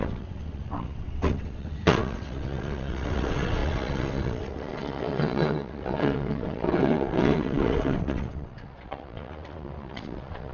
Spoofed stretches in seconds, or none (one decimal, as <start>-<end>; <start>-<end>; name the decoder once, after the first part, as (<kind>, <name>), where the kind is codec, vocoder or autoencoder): 0.0-10.5 (vocoder, WaveNeXt)